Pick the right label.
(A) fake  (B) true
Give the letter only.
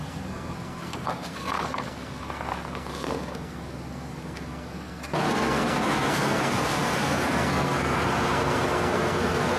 A